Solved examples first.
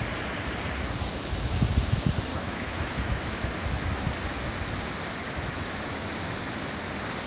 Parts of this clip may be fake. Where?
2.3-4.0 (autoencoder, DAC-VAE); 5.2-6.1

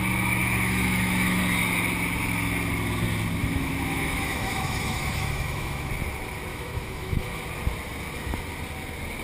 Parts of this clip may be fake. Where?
0.4-1.4 (autoencoder, DAC-VAE); 3.4-5.9; 6.5-7.4

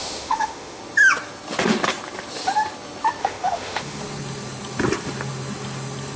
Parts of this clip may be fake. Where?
0.0-0.8 (autoencoder, DAC-VAE); 3.2-4.0

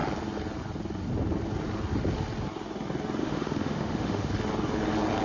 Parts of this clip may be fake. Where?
3.2-4.3 (autoencoder, DAC-VAE)

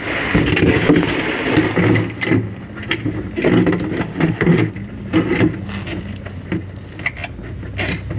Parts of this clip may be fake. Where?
4.1-4.7 (autoencoder, DAC-VAE)

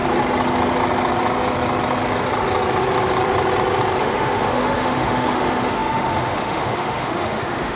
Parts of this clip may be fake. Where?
4.0-7.8 (autoencoder, DAC-VAE)

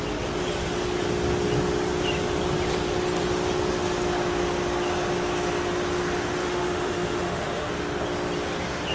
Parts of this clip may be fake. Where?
6.4-7.7 (autoencoder, DAC-VAE)